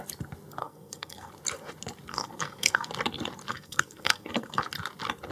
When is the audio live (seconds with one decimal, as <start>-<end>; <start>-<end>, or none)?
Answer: 0.0-0.6; 1.3-2.1; 2.9-3.5; 4.6-5.3

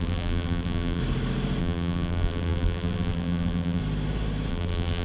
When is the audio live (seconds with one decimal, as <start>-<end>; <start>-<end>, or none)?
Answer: 1.0-1.6; 3.8-4.5

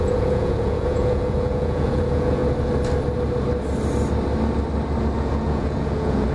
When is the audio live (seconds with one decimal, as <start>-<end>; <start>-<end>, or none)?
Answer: 2.4-5.2

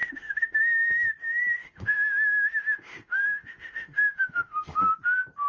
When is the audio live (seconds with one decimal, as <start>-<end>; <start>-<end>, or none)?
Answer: 0.6-1.6; 4.9-5.5

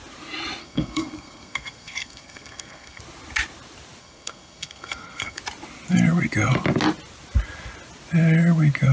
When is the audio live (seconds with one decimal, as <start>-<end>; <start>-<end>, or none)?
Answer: 0.0-0.6; 3.0-4.0; 5.4-8.9

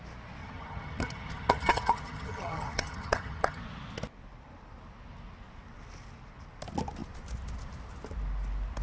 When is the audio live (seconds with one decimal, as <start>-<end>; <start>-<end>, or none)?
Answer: 0.0-0.4; 3.6-8.8

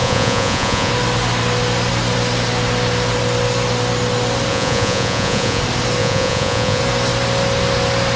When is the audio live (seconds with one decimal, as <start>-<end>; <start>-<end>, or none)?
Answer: 0.9-4.5; 5.6-6.0; 6.8-8.2

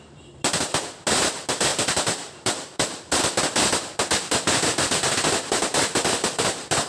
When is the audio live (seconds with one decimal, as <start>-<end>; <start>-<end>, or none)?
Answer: 0.0-1.7; 3.2-6.9